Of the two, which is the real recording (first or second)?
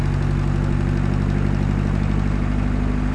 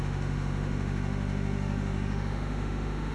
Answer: first